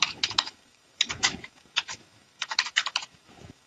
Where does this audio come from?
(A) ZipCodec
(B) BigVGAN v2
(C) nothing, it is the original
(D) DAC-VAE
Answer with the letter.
D